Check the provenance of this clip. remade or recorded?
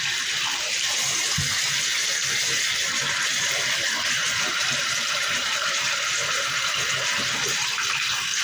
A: remade